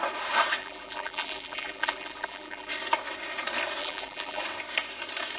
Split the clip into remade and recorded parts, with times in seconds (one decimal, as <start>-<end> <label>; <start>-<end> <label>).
0.0-0.6 recorded; 0.6-2.7 remade; 2.7-3.8 recorded; 3.8-4.4 remade; 4.4-5.4 recorded